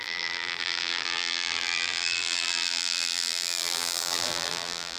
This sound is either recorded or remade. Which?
remade